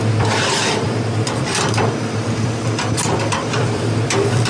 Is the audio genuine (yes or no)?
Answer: no